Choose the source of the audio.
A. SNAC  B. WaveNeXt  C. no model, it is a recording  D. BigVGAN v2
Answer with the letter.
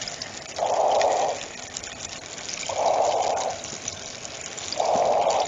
C